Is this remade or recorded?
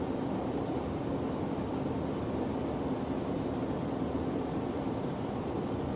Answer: recorded